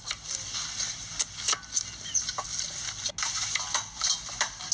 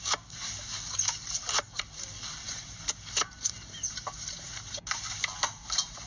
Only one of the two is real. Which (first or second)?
first